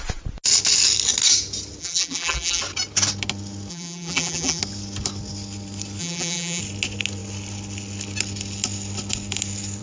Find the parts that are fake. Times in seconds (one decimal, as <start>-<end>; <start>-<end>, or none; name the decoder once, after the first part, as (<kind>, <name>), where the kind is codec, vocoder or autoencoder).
1.8-2.6 (vocoder, BigVGAN v2); 3.7-4.6; 6.0-6.6